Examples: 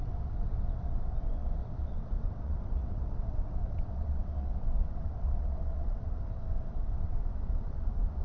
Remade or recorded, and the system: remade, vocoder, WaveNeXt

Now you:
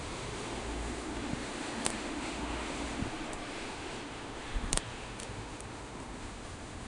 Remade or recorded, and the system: remade, autoencoder, DAC-VAE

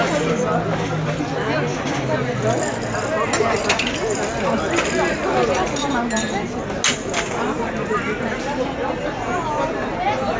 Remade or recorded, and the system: recorded